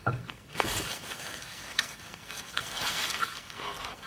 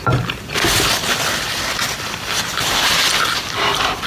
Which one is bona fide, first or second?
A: second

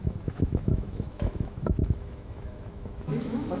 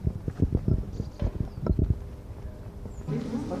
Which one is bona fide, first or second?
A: second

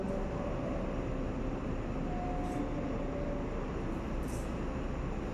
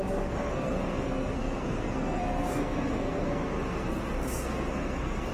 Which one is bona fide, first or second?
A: first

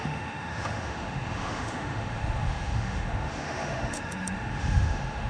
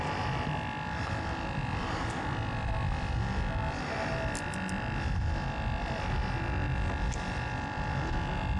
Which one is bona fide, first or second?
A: second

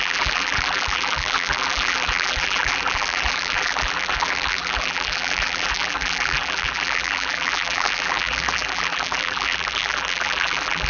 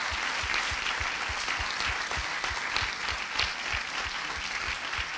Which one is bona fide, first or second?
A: second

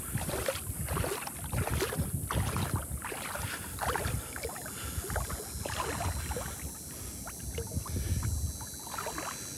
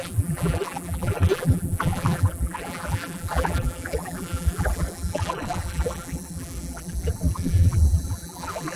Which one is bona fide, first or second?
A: first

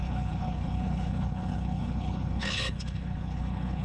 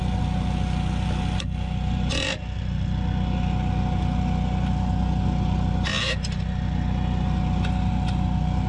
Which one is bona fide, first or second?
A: second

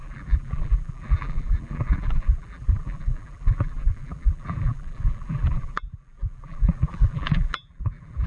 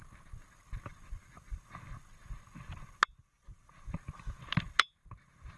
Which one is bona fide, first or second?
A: second